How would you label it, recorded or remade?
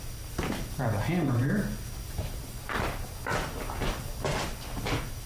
recorded